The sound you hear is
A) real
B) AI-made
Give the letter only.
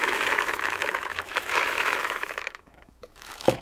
B